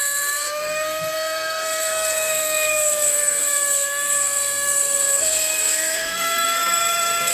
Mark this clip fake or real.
fake